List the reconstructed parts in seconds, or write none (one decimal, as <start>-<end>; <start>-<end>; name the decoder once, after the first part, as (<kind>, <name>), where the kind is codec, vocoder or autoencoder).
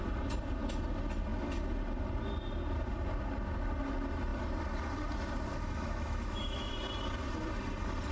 5.5-6.7 (autoencoder, DAC-VAE)